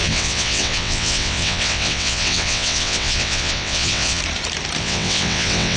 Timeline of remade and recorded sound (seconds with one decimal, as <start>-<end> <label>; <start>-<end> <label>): 0.0-4.2 remade; 4.2-4.8 recorded; 4.8-5.8 remade